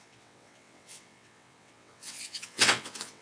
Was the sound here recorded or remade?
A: remade